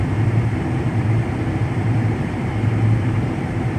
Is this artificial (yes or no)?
yes